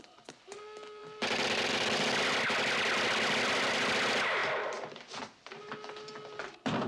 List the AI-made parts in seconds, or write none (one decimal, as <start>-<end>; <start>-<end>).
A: 4.4-5.7